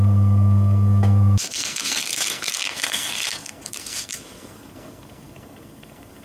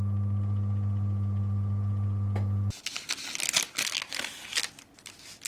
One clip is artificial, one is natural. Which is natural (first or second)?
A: second